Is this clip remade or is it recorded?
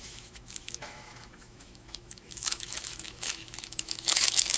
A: remade